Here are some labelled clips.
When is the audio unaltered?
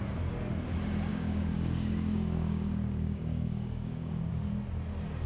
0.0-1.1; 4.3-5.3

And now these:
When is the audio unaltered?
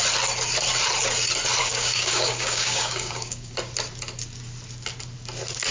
0.0-1.6; 3.5-5.7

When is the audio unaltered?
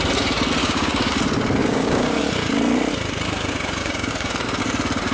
0.0-0.6; 1.2-1.6; 2.2-3.8; 4.6-5.1